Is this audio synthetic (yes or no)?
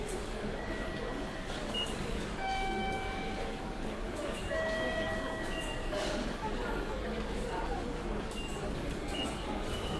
yes